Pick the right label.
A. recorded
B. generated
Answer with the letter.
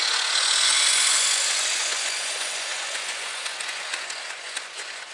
B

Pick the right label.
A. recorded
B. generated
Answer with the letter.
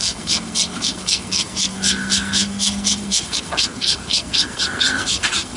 B